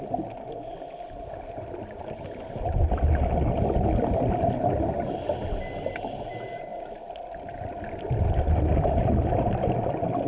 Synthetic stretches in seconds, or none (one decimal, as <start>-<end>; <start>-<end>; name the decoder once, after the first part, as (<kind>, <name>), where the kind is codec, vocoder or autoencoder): none